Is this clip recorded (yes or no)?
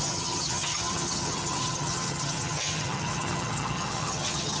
no